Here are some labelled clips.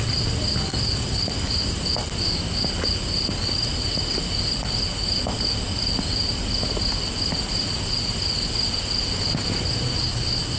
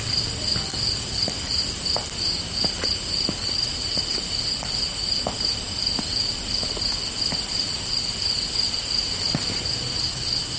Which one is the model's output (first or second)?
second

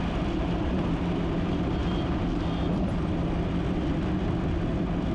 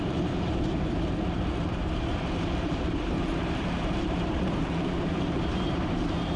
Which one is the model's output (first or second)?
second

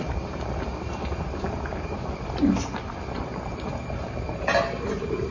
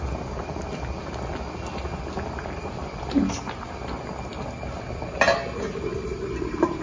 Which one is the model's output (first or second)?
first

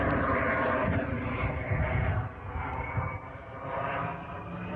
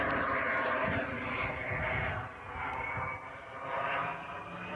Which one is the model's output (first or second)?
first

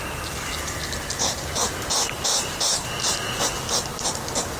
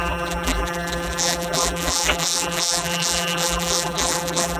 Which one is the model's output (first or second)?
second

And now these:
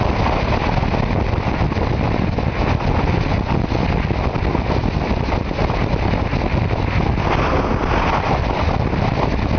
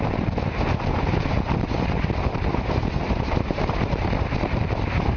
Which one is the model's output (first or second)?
second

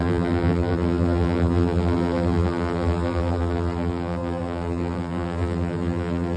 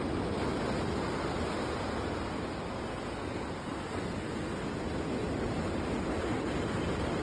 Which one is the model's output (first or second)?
first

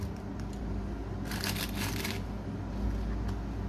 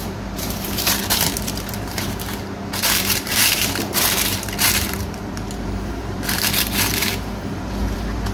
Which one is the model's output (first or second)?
second